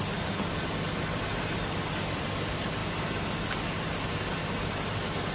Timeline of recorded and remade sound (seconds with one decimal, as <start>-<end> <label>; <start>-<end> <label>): 0.0-5.3 recorded